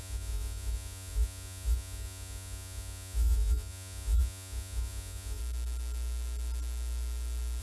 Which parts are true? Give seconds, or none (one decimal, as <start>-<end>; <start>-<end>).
5.4-7.6